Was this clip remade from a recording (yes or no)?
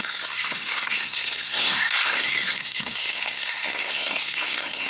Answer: yes